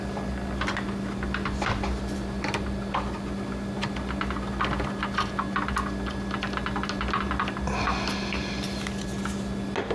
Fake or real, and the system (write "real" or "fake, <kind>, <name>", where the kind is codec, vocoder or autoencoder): real